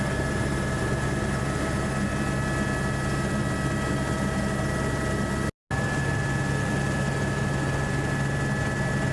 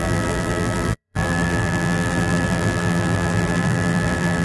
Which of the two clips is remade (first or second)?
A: second